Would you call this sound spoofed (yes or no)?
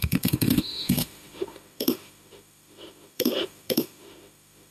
yes